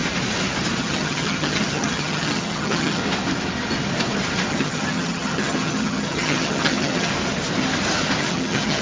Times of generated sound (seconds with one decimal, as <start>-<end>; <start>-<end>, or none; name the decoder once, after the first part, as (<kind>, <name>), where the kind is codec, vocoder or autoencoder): 0.8-3.0 (vocoder, HiFi-GAN); 4.5-7.1; 8.2-8.8